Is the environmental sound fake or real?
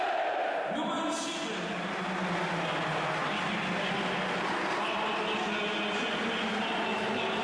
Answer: real